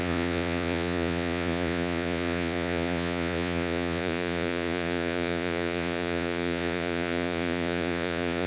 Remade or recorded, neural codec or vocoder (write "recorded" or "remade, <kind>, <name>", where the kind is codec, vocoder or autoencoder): remade, vocoder, Vocos